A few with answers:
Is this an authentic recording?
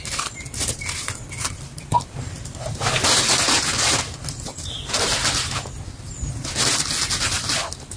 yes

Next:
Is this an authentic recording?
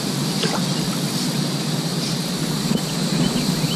yes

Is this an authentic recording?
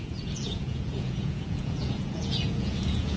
no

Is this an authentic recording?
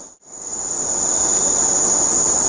yes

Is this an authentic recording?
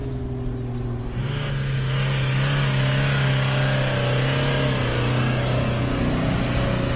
yes